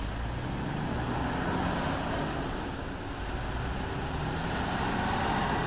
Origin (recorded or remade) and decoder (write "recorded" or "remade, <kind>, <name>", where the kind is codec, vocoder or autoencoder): recorded